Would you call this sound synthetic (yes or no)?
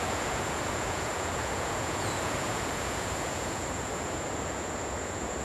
yes